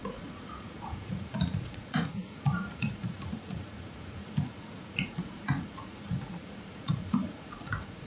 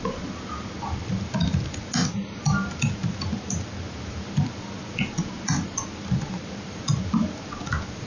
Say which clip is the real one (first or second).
second